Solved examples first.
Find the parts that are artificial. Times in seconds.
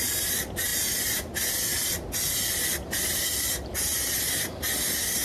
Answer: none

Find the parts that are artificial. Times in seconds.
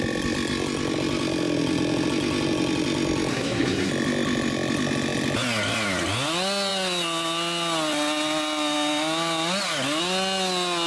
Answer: 3.3-3.9 (codec, SNAC)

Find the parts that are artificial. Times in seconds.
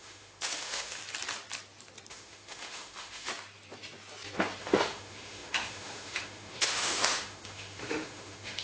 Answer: 0.0-1.0 (autoencoder, DAC-VAE); 2.1-3.3; 4.6-8.6